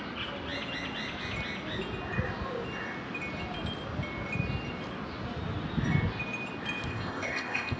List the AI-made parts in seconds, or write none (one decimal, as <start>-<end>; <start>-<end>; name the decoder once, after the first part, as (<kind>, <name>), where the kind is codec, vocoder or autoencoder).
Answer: 6.9-7.8 (codec, ZipCodec)